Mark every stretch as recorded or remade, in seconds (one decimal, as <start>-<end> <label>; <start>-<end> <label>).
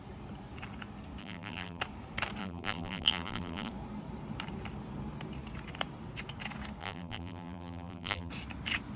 0.0-1.2 recorded; 1.2-1.8 remade; 1.8-2.4 recorded; 2.4-3.7 remade; 3.7-6.8 recorded; 6.8-8.3 remade; 8.3-9.0 recorded